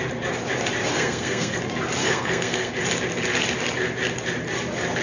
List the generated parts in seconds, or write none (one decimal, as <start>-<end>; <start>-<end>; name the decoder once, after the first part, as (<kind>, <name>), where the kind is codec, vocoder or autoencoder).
0.9-1.6 (codec, SNAC); 2.0-2.7